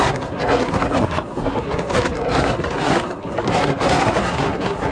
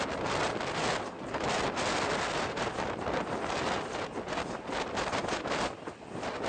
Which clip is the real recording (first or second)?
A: second